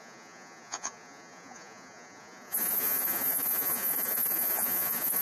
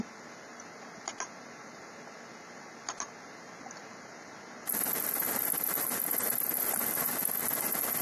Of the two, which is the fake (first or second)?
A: first